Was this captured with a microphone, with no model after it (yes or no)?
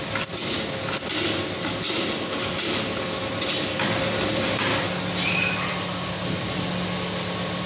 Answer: yes